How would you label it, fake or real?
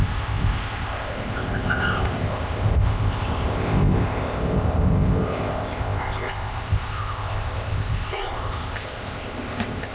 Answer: fake